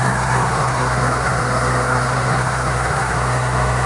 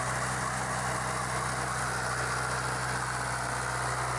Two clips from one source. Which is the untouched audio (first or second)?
second